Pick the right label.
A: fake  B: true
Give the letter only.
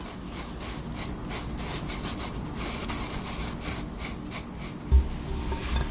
B